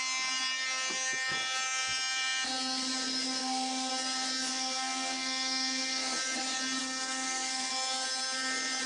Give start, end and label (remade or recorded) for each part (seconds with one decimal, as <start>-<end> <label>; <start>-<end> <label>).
0.0-3.4 recorded; 3.4-3.9 remade; 3.9-4.5 recorded; 4.5-6.2 remade; 6.2-6.8 recorded; 6.8-7.7 remade; 7.7-8.9 recorded